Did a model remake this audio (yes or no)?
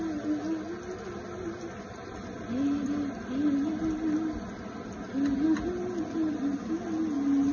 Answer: no